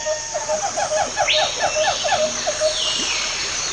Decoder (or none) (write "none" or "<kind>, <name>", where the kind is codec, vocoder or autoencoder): none